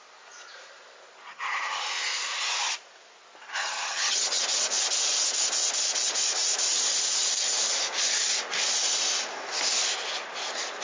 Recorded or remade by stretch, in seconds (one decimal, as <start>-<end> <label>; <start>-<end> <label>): 0.0-1.3 recorded; 1.3-1.8 remade; 1.8-3.6 recorded; 3.6-4.4 remade; 4.4-10.8 recorded